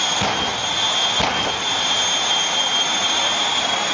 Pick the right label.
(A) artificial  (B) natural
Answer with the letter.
B